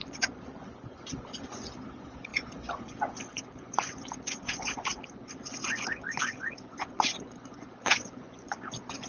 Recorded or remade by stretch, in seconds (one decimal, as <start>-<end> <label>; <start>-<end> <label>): 0.0-9.1 remade